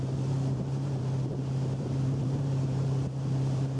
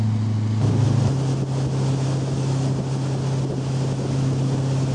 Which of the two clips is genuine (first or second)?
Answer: second